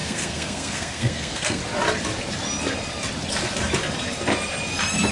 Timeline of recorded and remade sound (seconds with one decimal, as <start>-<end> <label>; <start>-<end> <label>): 0.0-1.6 remade; 1.6-5.1 recorded